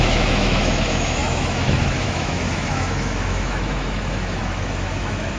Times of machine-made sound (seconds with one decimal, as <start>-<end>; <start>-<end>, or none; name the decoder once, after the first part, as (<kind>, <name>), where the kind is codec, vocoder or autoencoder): 0.0-5.4 (autoencoder, DAC-VAE)